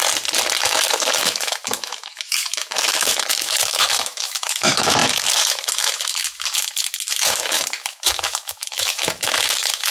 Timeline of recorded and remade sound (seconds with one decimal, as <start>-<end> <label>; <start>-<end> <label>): 0.0-0.6 recorded; 0.6-9.9 remade